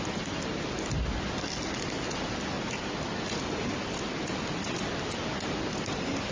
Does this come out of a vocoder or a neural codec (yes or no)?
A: no